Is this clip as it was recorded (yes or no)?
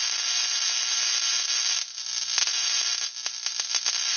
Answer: yes